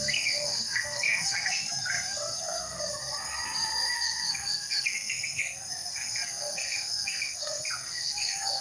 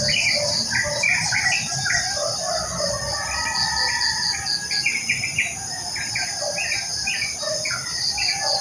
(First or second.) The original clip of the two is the second